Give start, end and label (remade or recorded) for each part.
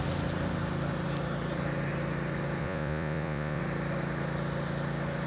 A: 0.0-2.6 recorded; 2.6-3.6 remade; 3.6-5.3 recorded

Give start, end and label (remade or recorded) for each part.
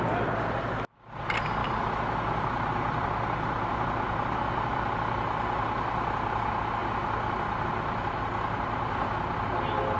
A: 0.0-10.0 recorded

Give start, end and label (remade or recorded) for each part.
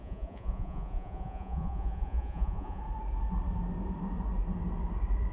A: 0.0-2.8 remade; 2.8-5.3 recorded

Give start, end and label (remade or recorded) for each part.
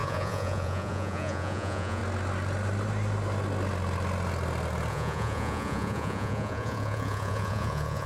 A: 0.0-2.0 remade; 2.0-4.9 recorded; 4.9-8.1 remade